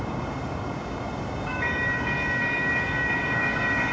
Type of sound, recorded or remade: remade